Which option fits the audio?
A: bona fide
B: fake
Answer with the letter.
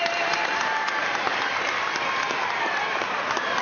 A